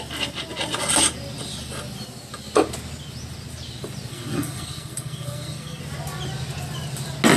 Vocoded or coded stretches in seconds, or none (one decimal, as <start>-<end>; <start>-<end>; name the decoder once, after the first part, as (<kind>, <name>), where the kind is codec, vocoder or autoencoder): 4.1-5.8 (codec, SNAC)